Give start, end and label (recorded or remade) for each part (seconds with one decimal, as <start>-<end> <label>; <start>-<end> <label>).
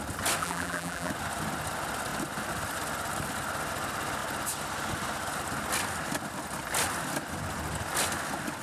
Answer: 0.0-0.4 recorded; 0.4-1.1 remade; 1.1-8.6 recorded